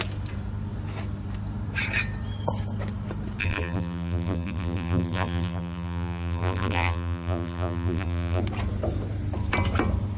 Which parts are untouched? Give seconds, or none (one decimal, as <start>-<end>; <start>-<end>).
0.0-3.4; 8.4-10.2